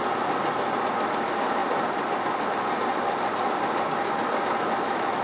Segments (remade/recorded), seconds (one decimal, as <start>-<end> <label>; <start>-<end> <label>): 0.0-5.2 recorded